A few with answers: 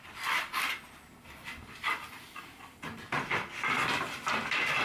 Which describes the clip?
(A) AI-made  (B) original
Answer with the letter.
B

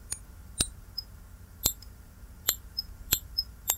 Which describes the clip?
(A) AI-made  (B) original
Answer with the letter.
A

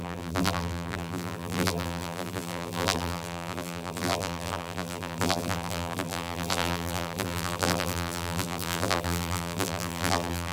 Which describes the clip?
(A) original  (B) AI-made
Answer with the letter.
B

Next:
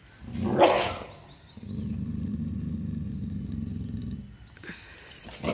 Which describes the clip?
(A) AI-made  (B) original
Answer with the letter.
A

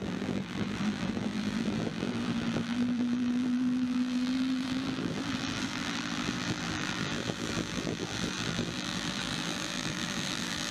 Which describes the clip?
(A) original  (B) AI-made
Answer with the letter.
B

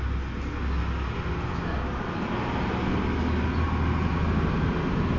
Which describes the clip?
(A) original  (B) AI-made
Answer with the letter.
A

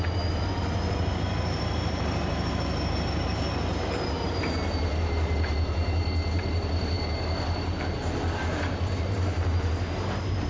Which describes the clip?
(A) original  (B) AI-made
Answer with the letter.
B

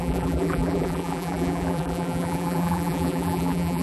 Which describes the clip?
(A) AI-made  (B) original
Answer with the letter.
A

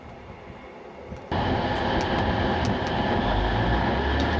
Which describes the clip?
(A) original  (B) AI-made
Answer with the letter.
A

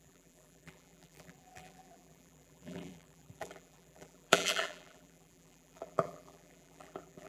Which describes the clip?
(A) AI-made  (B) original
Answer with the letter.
A